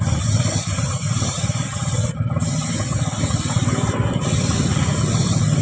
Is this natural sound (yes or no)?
no